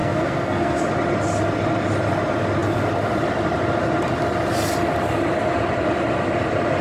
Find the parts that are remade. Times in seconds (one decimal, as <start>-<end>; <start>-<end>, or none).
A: 0.0-0.8

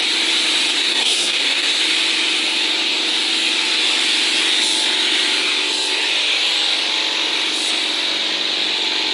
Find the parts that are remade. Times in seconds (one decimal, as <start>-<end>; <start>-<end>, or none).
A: 0.7-1.8

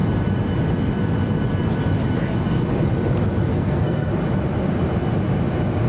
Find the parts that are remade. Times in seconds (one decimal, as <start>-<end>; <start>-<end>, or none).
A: 3.5-4.1

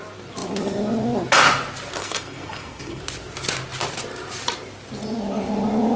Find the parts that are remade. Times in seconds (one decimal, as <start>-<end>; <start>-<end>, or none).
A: 2.0-3.0

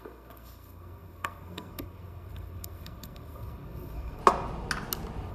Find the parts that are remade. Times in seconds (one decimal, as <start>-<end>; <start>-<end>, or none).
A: 0.0-4.2

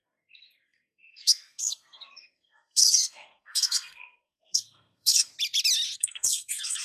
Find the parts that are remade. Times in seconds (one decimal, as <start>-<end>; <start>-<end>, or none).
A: 0.0-5.3; 6.0-6.8

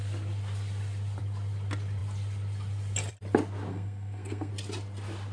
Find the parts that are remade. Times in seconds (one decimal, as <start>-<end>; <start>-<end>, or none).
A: 3.7-4.5